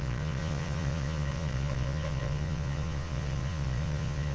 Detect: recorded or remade remade